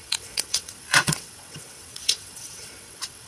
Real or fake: fake